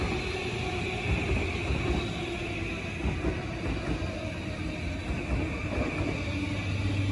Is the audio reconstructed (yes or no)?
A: no